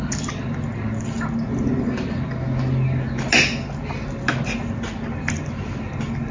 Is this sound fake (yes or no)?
no